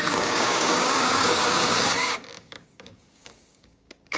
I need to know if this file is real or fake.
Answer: fake